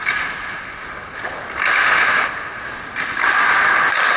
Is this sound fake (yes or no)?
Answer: no